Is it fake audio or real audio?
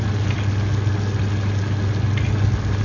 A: real